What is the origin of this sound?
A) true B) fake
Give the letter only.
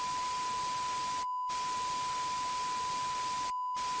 A